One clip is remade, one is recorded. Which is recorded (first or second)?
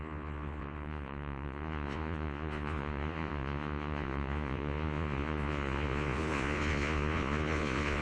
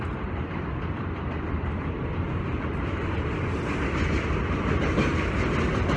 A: second